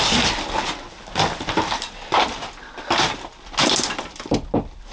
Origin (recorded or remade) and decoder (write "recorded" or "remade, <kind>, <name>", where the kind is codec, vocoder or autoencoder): recorded